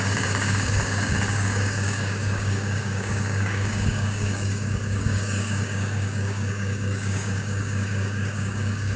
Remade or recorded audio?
remade